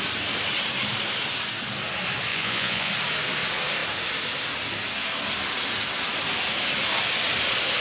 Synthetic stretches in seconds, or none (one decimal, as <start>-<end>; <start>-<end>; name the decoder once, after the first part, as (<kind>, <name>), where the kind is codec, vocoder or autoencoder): 2.3-2.9 (vocoder, Vocos)